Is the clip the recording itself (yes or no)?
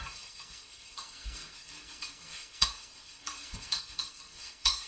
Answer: no